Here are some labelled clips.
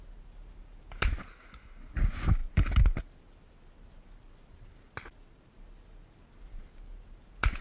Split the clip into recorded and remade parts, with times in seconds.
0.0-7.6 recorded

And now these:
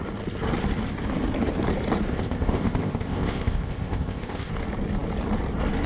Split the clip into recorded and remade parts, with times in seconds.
0.0-2.1 recorded; 2.1-4.5 remade; 4.5-5.9 recorded

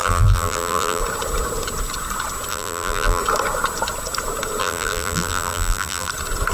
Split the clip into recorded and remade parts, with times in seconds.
0.0-1.0 remade; 1.0-2.5 recorded; 2.5-3.2 remade; 3.2-4.6 recorded; 4.6-6.1 remade; 6.1-6.5 recorded

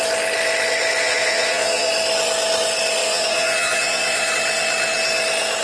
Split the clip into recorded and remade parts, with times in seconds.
0.0-1.0 recorded; 1.0-1.9 remade; 1.9-3.0 recorded; 3.0-4.3 remade; 4.3-5.6 recorded

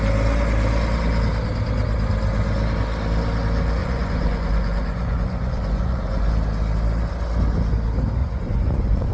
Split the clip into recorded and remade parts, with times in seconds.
0.0-3.8 recorded; 3.8-6.3 remade; 6.3-8.2 recorded; 8.2-9.1 remade

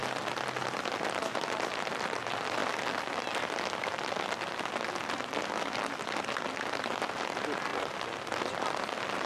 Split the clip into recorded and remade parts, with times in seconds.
0.0-1.7 recorded; 1.7-2.6 remade; 2.6-7.3 recorded; 7.3-7.7 remade; 7.7-8.4 recorded; 8.4-9.3 remade

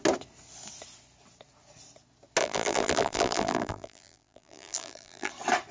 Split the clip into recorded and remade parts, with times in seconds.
0.0-2.4 recorded; 2.4-5.3 remade; 5.3-5.7 recorded

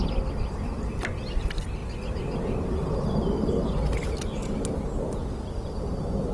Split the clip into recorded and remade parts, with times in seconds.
0.0-6.3 recorded